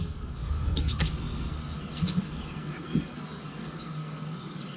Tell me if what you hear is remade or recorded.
remade